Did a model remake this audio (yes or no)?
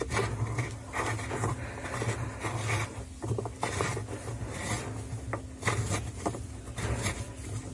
no